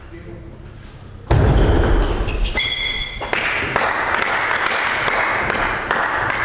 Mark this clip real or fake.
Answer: real